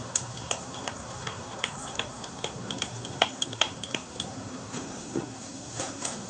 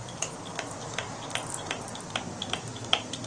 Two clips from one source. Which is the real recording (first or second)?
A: second